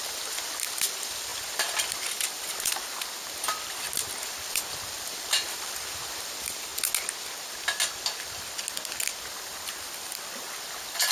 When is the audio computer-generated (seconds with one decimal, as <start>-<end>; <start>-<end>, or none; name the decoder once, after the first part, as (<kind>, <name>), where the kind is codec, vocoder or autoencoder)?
0.0-6.7 (vocoder, BigVGAN v2); 9.2-11.1